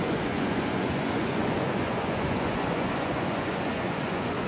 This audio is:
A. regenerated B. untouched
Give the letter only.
A